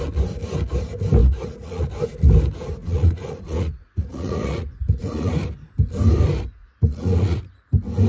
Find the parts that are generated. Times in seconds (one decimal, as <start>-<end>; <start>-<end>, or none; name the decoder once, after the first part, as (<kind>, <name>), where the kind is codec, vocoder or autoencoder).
1.2-1.9 (vocoder, Vocos); 2.8-5.3; 6.6-7.4